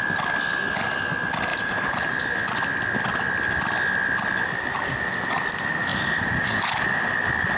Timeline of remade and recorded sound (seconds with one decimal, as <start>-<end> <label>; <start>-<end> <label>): 0.0-1.5 recorded; 1.5-2.1 remade; 2.1-5.9 recorded; 5.9-6.6 remade; 6.6-7.6 recorded